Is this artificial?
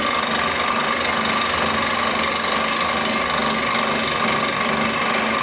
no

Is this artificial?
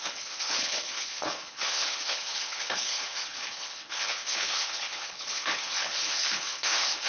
yes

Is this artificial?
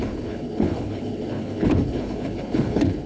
yes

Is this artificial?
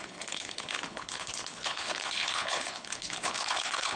yes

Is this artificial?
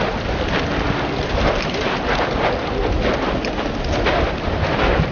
no